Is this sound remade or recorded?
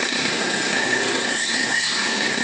remade